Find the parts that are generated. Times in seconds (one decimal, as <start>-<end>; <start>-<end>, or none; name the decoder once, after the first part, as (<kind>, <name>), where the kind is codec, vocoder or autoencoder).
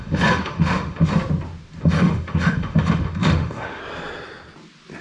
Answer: 0.0-1.1 (autoencoder, DAC-VAE); 1.8-3.8